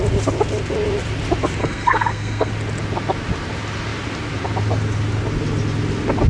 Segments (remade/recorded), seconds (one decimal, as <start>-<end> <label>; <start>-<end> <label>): 0.0-1.6 recorded; 1.6-2.5 remade; 2.5-6.3 recorded